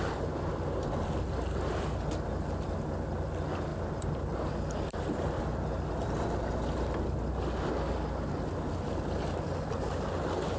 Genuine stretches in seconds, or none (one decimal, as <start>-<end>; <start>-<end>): 0.0-10.6